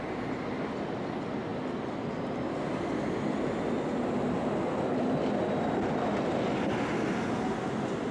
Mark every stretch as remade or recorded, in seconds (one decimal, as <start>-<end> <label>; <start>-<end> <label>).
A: 0.0-8.1 recorded